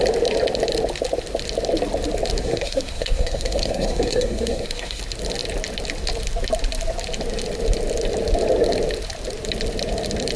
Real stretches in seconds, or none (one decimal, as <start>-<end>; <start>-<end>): 0.0-2.4; 5.0-10.4